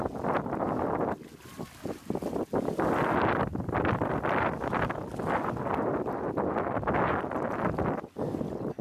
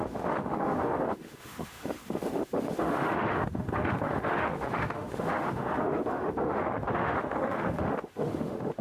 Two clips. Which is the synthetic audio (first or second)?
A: second